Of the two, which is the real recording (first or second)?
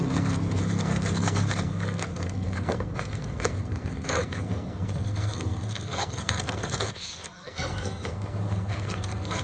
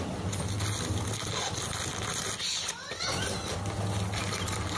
second